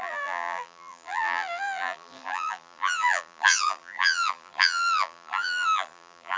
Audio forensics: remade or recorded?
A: remade